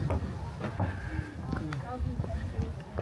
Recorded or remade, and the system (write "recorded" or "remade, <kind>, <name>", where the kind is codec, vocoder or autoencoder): recorded